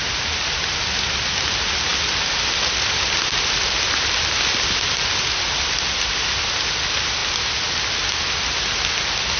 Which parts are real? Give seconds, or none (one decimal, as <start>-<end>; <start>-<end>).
0.0-9.4